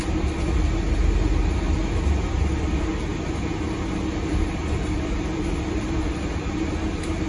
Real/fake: real